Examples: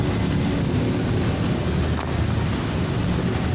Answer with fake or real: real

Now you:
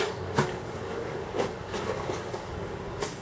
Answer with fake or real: fake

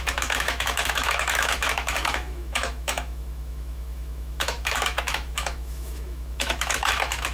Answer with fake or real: fake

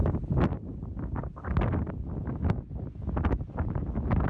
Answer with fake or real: real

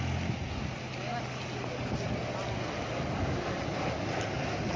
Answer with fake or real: real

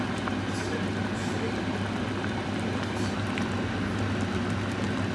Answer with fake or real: real